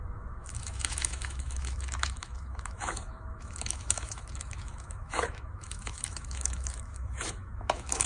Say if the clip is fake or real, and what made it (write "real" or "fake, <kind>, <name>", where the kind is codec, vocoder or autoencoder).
fake, autoencoder, DAC-VAE